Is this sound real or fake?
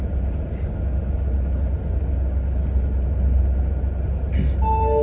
real